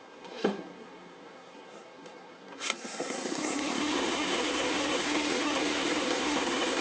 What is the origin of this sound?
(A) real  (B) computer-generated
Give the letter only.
B